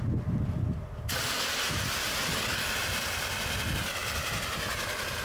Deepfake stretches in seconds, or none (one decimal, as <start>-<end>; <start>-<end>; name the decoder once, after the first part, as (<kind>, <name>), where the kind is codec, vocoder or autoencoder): 2.8-3.6 (vocoder, BigVGAN v2); 4.0-4.7